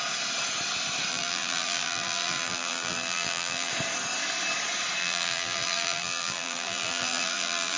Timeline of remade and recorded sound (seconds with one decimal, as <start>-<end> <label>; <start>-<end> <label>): 0.0-1.1 recorded; 1.1-3.7 remade; 3.7-5.0 recorded; 5.0-7.8 remade